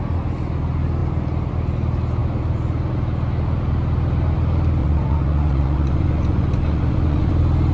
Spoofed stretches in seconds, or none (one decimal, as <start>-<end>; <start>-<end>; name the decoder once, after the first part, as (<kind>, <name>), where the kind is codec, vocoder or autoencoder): 4.8-7.3 (vocoder, Vocos)